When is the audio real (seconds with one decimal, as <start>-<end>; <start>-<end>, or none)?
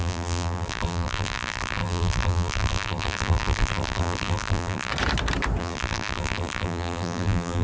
4.9-5.6